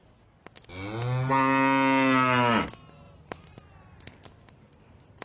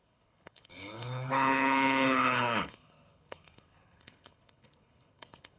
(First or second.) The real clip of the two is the first